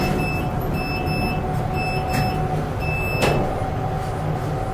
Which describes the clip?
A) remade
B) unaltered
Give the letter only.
B